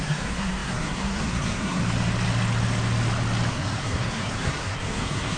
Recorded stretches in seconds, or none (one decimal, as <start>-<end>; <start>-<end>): 1.8-3.5